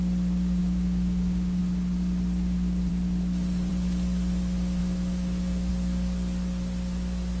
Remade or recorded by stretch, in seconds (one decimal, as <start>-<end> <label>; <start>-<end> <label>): 0.0-0.6 recorded; 0.6-1.6 remade; 1.6-4.8 recorded; 4.8-5.7 remade; 5.7-7.4 recorded